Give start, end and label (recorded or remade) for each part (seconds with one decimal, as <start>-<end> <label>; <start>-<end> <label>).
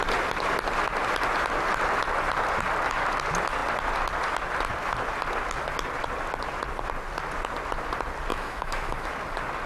0.0-8.3 recorded; 8.3-9.1 remade; 9.1-9.7 recorded